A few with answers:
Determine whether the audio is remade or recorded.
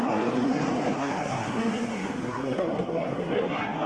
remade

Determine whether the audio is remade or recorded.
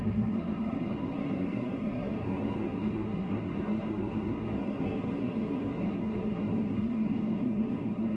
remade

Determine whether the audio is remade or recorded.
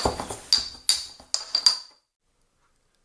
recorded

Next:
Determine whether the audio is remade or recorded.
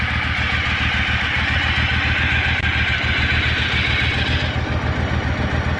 recorded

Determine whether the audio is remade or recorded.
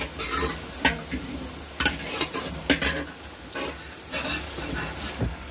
recorded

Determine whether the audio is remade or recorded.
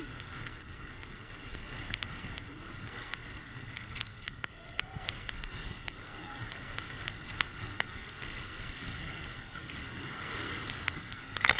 remade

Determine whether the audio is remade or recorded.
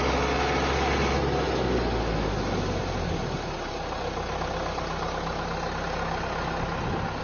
recorded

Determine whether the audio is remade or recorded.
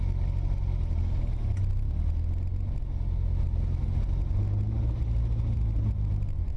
recorded